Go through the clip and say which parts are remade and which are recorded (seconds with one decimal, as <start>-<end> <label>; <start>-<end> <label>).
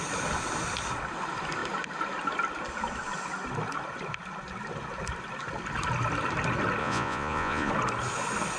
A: 0.0-6.8 recorded; 6.8-7.7 remade; 7.7-8.6 recorded